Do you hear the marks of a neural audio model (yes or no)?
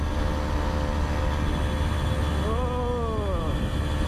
no